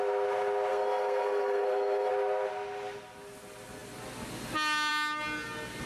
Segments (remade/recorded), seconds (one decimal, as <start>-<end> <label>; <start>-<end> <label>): 0.0-0.7 recorded; 0.7-2.1 remade; 2.1-5.9 recorded